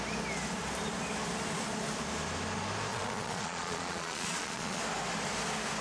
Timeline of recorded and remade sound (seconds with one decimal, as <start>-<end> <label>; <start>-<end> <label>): 0.0-2.9 recorded; 2.9-4.8 remade; 4.8-5.8 recorded